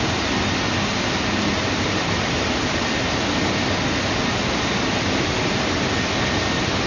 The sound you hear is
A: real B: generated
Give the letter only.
A